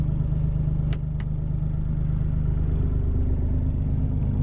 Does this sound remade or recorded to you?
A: recorded